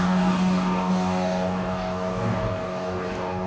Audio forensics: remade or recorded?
remade